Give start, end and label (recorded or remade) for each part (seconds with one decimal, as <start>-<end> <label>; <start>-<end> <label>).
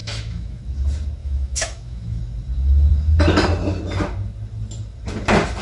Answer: 0.0-0.6 remade; 0.6-1.2 recorded; 1.2-2.2 remade; 2.2-5.6 recorded